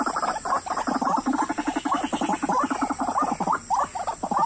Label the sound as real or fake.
real